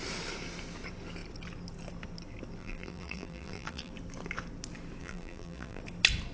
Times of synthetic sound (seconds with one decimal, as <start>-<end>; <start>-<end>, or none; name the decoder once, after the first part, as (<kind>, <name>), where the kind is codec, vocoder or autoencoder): 2.6-3.9 (vocoder, BigVGAN v2); 5.0-5.8